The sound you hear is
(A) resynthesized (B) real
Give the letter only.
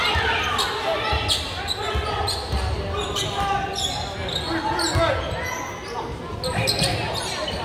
B